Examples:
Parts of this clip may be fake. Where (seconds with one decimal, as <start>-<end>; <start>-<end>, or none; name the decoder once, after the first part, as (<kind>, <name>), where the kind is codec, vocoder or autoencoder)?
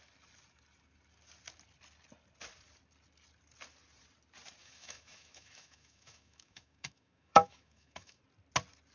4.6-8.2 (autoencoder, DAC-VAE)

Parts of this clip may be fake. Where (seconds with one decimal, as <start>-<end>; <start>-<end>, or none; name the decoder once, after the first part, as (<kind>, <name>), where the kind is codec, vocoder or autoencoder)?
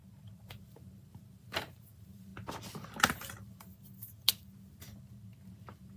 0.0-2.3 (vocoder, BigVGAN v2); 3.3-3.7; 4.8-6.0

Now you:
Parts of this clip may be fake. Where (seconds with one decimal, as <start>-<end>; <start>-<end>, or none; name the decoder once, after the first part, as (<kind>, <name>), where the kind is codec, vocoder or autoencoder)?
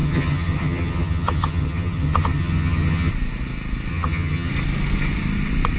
0.0-3.1 (vocoder, HiFi-GAN); 3.9-4.5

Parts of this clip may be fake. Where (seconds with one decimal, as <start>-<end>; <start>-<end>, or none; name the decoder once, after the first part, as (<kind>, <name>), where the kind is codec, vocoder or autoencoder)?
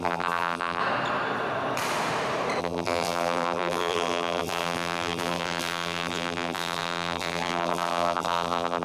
0.0-0.8 (vocoder, BigVGAN v2); 2.6-8.8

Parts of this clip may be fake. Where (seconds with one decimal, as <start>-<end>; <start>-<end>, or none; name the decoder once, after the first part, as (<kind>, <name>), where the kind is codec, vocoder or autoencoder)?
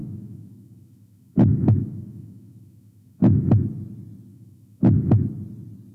0.0-3.5 (autoencoder, DAC-VAE); 4.3-5.1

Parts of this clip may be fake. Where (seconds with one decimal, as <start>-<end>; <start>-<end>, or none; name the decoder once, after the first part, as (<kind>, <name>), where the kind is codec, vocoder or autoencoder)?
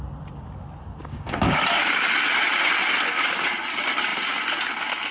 1.0-1.6 (codec, DAC)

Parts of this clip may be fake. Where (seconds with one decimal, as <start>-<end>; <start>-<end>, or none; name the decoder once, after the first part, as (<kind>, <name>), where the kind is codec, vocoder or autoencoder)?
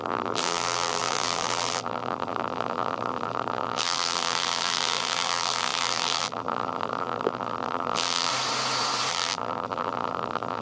0.0-8.3 (vocoder, BigVGAN v2); 9.1-10.6